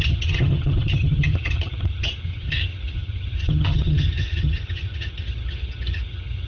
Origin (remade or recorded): remade